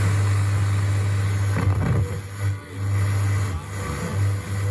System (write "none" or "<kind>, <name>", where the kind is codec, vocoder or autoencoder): none